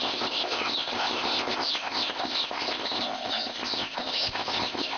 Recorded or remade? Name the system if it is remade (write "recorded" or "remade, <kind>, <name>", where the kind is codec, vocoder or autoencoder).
remade, codec, ZipCodec